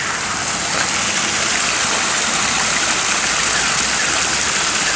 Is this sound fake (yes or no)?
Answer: no